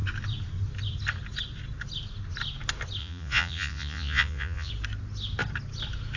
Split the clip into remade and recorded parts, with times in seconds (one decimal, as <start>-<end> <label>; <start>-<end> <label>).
0.0-3.0 recorded; 3.0-4.7 remade; 4.7-6.2 recorded